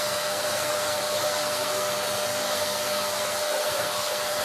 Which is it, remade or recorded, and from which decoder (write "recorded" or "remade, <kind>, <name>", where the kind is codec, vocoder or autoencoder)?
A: remade, codec, SNAC